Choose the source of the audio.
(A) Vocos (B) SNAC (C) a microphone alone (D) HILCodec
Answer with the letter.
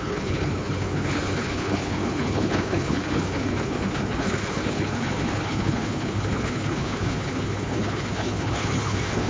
D